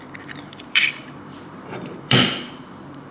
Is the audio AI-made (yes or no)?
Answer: yes